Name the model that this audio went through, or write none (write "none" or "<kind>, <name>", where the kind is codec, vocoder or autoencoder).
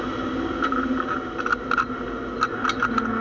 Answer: none